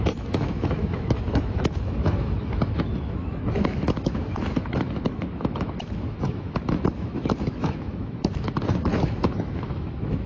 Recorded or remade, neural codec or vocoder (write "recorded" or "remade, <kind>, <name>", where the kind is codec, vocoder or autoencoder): remade, autoencoder, DAC-VAE